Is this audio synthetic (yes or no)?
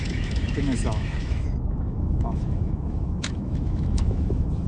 yes